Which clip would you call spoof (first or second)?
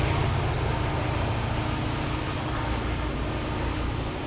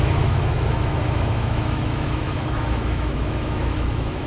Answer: second